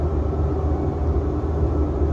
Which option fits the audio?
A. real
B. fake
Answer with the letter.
A